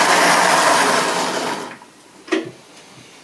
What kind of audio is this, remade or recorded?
recorded